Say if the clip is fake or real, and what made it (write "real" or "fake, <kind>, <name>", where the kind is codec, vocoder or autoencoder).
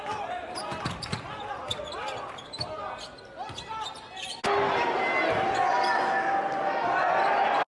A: real